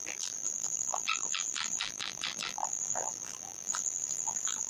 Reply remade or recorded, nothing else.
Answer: remade